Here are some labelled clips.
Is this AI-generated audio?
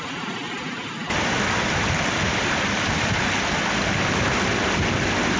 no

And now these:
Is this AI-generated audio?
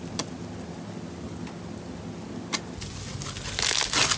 no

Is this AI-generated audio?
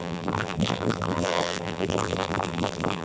yes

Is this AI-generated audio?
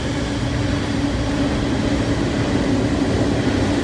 no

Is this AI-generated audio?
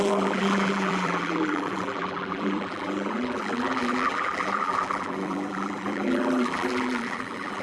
yes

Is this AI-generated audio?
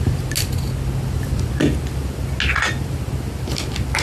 no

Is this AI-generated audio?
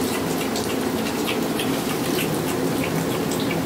yes